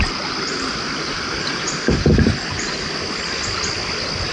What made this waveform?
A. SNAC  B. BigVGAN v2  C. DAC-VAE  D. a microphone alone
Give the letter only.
D